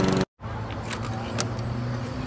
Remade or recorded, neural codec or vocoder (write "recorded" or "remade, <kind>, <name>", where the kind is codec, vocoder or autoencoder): recorded